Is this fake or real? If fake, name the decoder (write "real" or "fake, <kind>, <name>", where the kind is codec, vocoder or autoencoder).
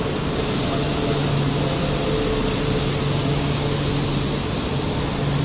real